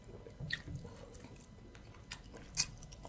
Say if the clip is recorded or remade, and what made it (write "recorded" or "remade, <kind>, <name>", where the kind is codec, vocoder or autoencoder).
recorded